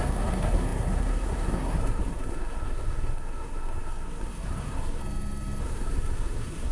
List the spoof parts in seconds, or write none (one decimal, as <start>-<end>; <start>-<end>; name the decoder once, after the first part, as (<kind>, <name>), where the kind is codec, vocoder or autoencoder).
0.0-5.0 (codec, SNAC); 5.6-6.7